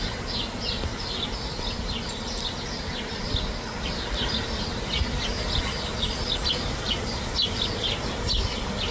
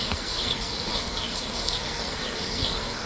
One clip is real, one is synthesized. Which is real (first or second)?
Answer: first